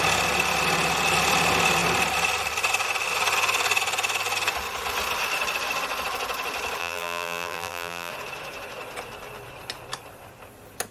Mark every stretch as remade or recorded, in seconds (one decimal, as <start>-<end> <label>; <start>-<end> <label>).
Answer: 0.0-6.8 recorded; 6.8-8.1 remade; 8.1-10.9 recorded